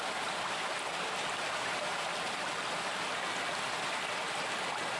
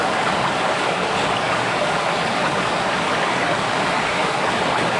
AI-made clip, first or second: second